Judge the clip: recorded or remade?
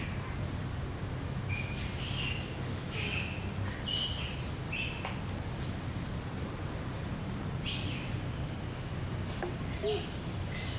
recorded